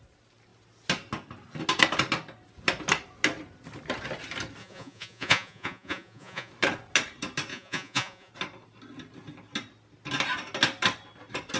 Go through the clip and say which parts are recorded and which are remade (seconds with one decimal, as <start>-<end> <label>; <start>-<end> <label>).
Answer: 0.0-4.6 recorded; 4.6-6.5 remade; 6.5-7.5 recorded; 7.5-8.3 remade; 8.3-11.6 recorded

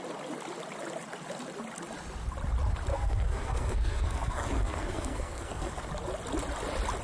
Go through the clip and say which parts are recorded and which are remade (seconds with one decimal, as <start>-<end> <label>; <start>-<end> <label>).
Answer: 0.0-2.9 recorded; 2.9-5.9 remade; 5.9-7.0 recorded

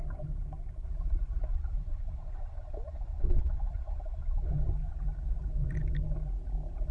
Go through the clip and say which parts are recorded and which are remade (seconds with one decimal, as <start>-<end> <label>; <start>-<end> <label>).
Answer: 0.0-1.4 recorded; 1.4-4.7 remade; 4.7-6.9 recorded

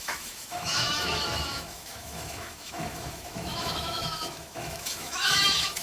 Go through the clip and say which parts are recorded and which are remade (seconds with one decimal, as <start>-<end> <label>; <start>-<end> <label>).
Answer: 0.0-5.8 remade

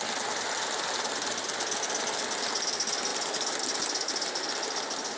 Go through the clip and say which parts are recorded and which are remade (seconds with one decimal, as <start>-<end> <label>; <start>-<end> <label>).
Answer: 0.0-5.2 recorded

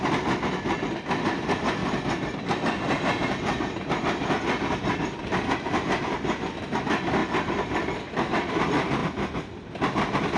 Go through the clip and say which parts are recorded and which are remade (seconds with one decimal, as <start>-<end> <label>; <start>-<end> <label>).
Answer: 0.0-1.8 recorded; 1.8-6.0 remade; 6.0-7.2 recorded; 7.2-8.5 remade; 8.5-10.4 recorded

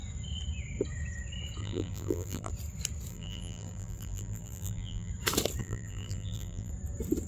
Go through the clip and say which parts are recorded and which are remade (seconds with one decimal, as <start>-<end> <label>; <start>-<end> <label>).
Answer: 0.0-1.6 recorded; 1.6-2.5 remade; 2.5-3.1 recorded; 3.1-5.1 remade; 5.1-5.6 recorded; 5.6-6.7 remade; 6.7-7.3 recorded